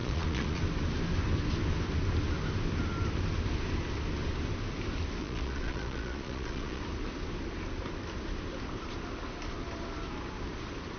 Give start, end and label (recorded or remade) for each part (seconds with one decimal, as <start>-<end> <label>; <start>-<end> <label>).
0.0-0.6 remade; 0.6-5.2 recorded; 5.2-6.8 remade; 6.8-11.0 recorded